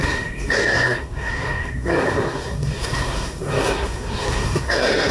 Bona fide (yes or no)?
no